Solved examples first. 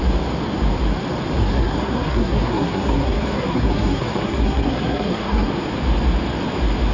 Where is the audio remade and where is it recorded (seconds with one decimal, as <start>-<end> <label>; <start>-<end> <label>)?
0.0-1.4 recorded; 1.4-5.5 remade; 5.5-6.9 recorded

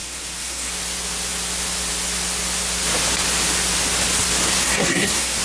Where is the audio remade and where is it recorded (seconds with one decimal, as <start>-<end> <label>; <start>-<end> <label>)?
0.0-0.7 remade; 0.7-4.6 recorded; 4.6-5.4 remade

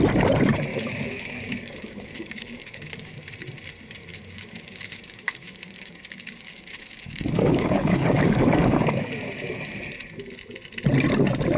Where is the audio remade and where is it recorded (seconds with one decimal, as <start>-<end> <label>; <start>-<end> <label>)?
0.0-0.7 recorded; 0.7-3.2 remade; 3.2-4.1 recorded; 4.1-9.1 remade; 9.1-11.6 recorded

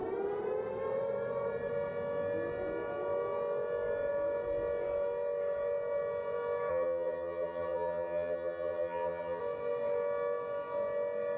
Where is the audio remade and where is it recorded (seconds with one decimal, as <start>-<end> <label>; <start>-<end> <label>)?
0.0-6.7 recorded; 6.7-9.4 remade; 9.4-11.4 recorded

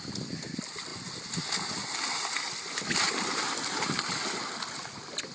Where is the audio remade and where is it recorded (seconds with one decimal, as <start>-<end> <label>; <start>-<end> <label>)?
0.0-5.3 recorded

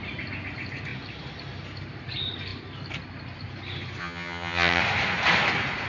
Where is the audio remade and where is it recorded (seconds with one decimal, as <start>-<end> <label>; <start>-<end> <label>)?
0.0-4.0 recorded; 4.0-4.8 remade; 4.8-5.9 recorded

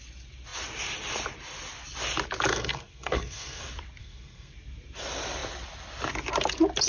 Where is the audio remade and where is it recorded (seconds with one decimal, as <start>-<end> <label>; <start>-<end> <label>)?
0.0-2.5 recorded; 2.5-3.6 remade; 3.6-4.0 recorded; 4.0-4.5 remade; 4.5-6.9 recorded